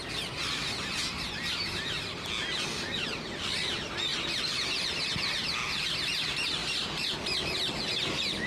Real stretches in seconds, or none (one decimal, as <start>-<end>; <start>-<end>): 0.0-4.1; 5.1-8.5